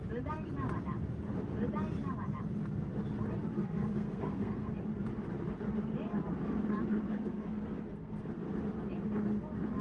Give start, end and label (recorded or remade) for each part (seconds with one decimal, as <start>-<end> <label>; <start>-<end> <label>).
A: 0.0-3.6 recorded; 3.6-4.7 remade; 4.7-7.1 recorded; 7.1-8.5 remade; 8.5-9.8 recorded